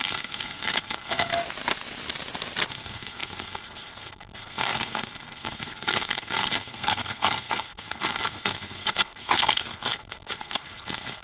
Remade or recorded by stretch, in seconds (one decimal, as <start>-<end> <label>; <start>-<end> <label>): 0.0-1.3 remade; 1.3-2.7 recorded; 2.7-11.2 remade